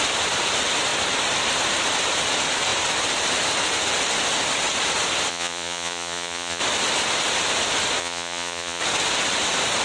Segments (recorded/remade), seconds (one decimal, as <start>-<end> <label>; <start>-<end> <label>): 0.0-5.3 recorded; 5.3-6.6 remade; 6.6-8.0 recorded; 8.0-8.8 remade; 8.8-9.8 recorded